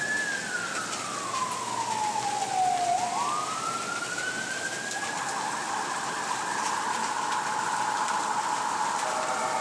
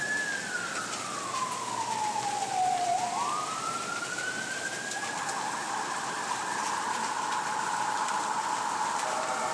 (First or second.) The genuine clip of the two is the first